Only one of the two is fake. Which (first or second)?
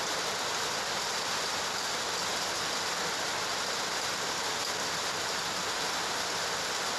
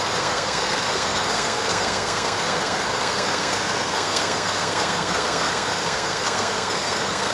second